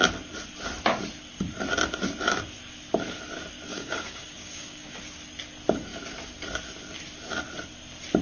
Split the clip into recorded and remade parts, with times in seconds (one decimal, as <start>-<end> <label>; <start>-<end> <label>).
0.0-3.7 recorded; 3.7-5.0 remade; 5.0-8.2 recorded